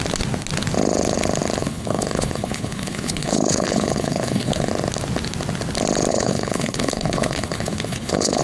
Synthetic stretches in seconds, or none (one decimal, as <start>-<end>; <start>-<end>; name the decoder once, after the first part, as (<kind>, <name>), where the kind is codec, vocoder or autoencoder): 1.6-4.7 (codec, HILCodec); 6.1-8.4